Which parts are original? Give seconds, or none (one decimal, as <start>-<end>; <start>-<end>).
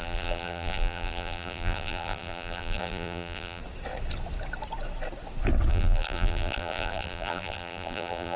3.6-5.7